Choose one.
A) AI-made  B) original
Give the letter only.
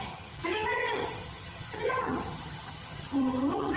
A